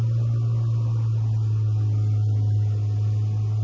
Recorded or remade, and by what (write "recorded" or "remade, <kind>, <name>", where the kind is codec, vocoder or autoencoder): recorded